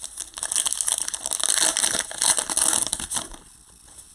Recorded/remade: recorded